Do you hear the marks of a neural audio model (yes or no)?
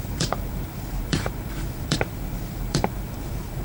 yes